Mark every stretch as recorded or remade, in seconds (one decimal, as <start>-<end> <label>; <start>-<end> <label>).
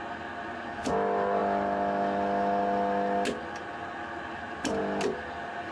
0.0-5.7 recorded